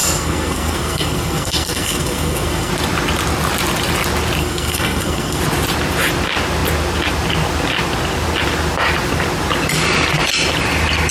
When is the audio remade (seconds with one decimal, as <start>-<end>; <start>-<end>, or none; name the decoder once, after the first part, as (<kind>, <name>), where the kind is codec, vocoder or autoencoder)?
0.0-2.7 (codec, SNAC); 4.4-5.4